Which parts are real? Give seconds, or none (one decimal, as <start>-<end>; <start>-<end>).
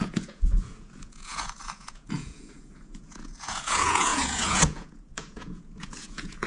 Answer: none